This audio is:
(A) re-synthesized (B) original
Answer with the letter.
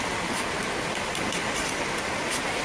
B